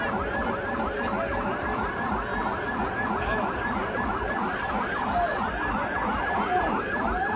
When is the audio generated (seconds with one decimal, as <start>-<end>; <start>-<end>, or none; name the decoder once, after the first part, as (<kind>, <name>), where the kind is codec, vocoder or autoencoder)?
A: 0.0-2.3 (vocoder, BigVGAN v2); 2.9-5.3; 6.2-7.4